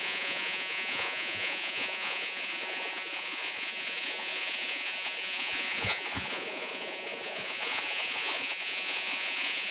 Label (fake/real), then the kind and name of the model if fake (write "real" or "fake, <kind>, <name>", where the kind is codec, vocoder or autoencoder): fake, vocoder, Vocos